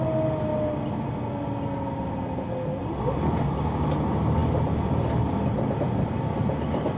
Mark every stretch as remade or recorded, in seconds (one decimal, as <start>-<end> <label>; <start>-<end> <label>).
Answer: 0.0-4.4 recorded; 4.4-6.3 remade; 6.3-7.0 recorded